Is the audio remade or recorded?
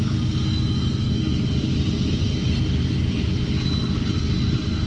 recorded